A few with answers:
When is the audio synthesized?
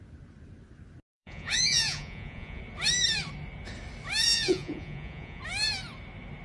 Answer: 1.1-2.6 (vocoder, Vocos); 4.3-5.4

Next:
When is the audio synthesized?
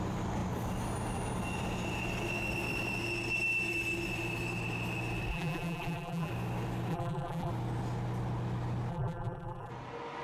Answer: 5.3-6.3 (vocoder, BigVGAN v2); 6.9-7.5; 8.9-9.7